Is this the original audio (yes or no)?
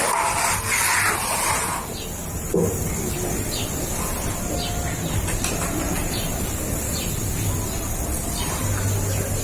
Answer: yes